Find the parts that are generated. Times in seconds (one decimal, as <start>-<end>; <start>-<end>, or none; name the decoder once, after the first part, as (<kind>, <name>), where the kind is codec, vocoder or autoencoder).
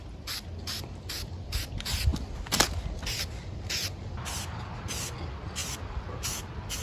5.6-6.8 (vocoder, BigVGAN v2)